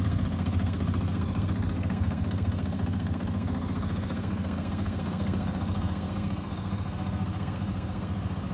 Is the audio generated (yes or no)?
yes